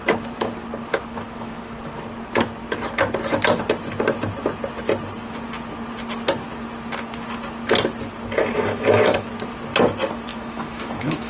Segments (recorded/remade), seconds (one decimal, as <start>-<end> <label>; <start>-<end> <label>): 0.0-0.9 recorded; 0.9-1.8 remade; 1.8-8.4 recorded; 8.4-9.3 remade; 9.3-10.3 recorded; 10.3-11.3 remade